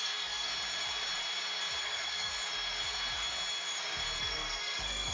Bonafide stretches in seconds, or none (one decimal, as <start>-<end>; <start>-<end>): 0.5-1.8; 2.3-4.2